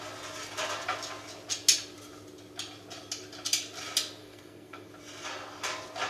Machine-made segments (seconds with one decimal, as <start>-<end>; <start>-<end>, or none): 4.2-4.9